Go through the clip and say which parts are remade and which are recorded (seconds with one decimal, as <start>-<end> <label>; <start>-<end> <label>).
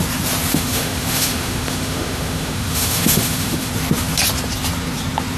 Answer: 0.0-0.5 recorded; 0.5-3.7 remade; 3.7-5.4 recorded